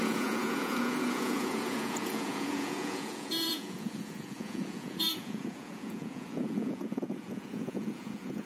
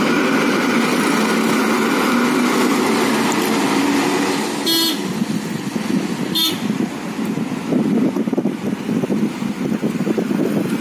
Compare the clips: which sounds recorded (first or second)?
second